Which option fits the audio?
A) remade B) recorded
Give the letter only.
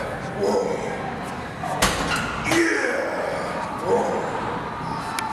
B